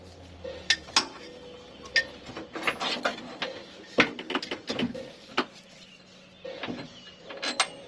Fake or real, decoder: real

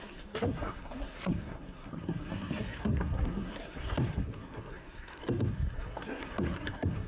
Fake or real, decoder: fake, codec, SNAC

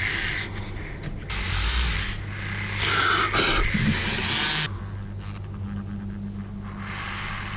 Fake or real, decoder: real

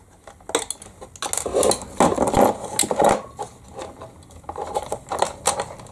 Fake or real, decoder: real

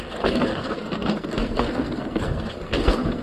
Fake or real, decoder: fake, codec, SNAC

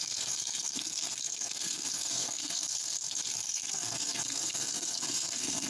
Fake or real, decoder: fake, codec, SNAC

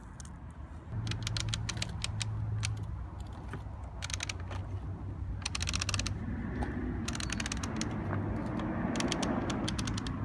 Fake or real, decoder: real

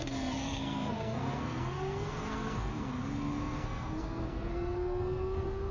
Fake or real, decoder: fake, codec, SNAC